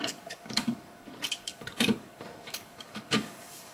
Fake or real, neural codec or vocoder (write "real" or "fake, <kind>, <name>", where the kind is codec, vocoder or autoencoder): fake, codec, DAC